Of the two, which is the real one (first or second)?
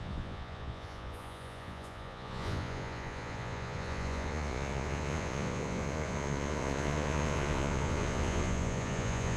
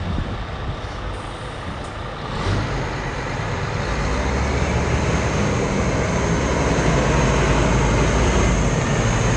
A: second